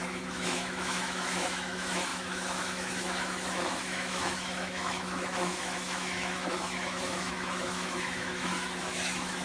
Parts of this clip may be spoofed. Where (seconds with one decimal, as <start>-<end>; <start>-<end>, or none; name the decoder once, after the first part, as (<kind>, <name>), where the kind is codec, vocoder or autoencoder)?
0.0-9.4 (autoencoder, DAC-VAE)